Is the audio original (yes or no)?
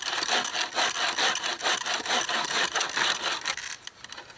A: yes